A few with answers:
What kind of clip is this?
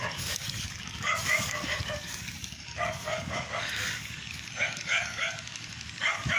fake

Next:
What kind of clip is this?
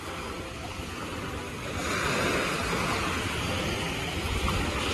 real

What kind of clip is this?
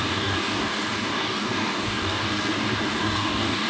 fake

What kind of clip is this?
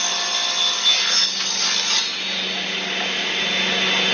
real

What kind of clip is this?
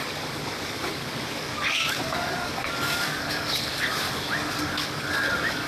fake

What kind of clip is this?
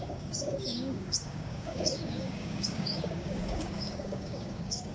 fake